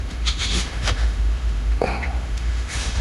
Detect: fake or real fake